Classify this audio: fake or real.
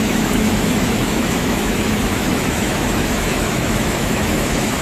fake